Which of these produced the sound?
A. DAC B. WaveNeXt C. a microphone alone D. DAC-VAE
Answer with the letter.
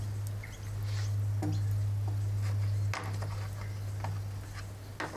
C